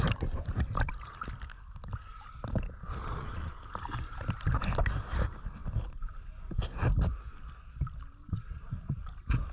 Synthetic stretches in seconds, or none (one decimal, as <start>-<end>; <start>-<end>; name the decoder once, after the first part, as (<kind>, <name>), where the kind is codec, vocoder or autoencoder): 3.0-3.6 (vocoder, Vocos); 8.2-9.0